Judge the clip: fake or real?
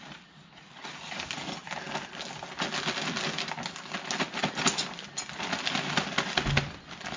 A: real